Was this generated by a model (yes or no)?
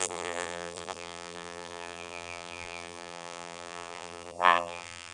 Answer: yes